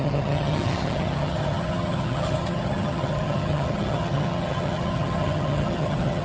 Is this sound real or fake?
fake